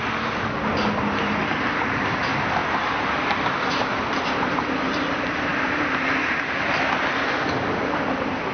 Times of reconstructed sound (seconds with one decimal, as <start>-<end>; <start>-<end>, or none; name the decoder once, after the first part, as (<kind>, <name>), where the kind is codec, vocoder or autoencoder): 2.6-3.7 (vocoder, BigVGAN v2)